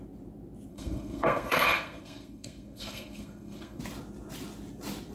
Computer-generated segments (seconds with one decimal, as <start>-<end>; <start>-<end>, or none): 0.7-3.8